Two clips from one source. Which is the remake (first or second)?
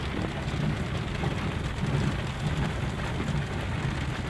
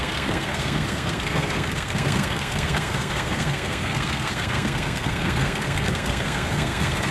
second